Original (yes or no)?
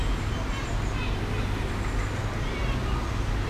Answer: yes